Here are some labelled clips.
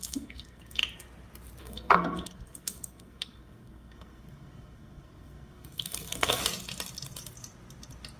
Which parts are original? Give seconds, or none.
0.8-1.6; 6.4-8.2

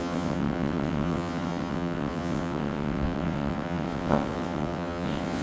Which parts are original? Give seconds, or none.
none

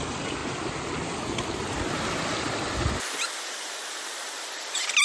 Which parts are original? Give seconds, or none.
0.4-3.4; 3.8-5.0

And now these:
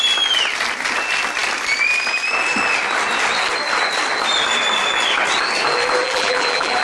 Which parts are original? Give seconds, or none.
0.0-6.0

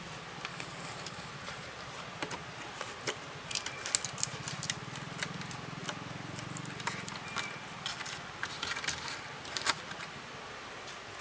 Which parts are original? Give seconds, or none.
0.0-0.5; 1.3-11.2